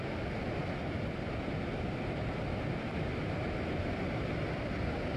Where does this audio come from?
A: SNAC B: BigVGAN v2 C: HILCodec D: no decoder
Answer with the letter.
D